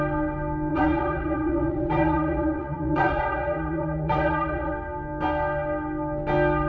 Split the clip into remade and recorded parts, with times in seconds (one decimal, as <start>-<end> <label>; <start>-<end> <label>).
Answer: 0.0-0.7 recorded; 0.7-4.7 remade; 4.7-6.7 recorded